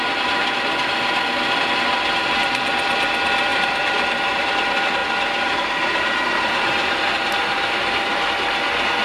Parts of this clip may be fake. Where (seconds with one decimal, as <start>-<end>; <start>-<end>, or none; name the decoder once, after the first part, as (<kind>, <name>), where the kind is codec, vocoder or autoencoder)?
3.5-4.5 (vocoder, BigVGAN v2); 5.0-8.3